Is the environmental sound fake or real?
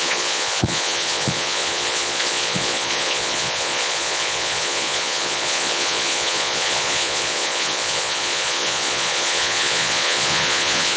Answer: fake